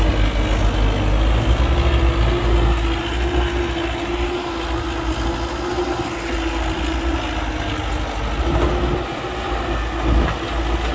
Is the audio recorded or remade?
recorded